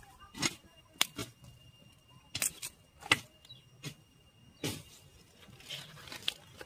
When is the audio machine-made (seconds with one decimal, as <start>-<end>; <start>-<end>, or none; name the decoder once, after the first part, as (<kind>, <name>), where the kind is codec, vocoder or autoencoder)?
none